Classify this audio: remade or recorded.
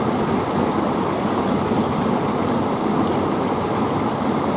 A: recorded